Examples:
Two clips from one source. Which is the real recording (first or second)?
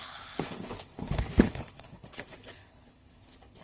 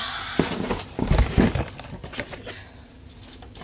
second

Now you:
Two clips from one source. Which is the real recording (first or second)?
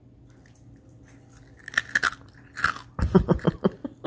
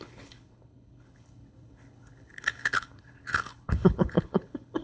first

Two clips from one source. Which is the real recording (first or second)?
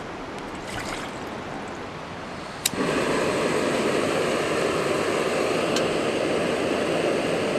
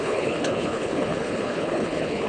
first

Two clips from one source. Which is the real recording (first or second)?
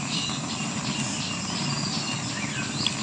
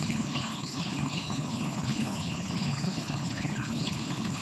first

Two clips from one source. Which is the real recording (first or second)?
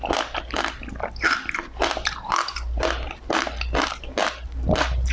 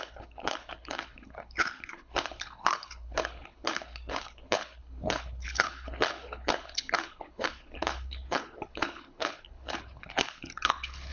first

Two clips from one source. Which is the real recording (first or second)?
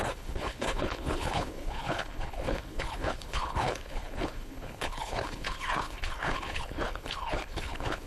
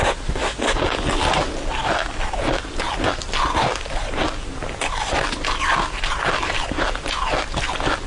second